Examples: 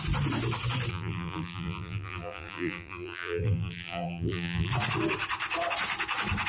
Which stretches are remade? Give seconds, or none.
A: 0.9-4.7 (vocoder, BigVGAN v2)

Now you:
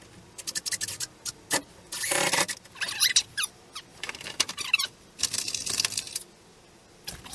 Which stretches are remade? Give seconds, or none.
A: 3.9-4.5 (vocoder, BigVGAN v2)

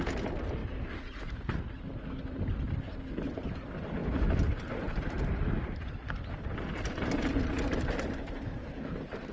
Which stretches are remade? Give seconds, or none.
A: 0.6-1.7 (vocoder, BigVGAN v2); 4.0-9.3